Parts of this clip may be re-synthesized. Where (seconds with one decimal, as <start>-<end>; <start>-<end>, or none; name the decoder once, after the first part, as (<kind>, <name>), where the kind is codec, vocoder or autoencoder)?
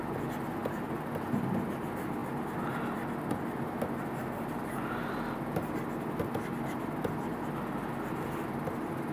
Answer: none